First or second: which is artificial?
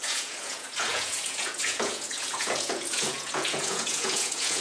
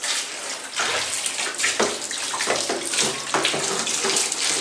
first